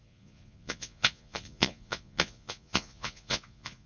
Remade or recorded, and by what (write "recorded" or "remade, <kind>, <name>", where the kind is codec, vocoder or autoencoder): remade, vocoder, Vocos